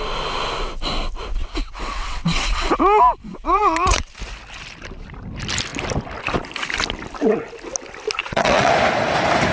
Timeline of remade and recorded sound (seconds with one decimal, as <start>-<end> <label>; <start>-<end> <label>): 0.0-1.4 recorded; 1.4-2.7 remade; 2.7-3.3 recorded; 3.3-4.1 remade; 4.1-8.2 recorded; 8.2-8.7 remade; 8.7-9.5 recorded